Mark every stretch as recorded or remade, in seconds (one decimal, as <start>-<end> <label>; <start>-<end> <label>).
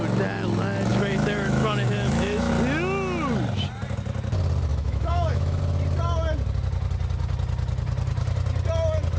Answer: 0.0-0.9 recorded; 0.9-2.5 remade; 2.5-4.7 recorded; 4.7-5.6 remade; 5.6-9.2 recorded